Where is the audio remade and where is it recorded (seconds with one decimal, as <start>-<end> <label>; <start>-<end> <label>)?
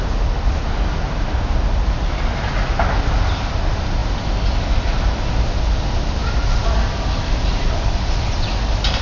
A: 0.0-9.0 recorded